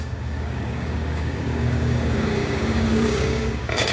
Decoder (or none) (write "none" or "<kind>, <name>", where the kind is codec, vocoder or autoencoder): codec, DAC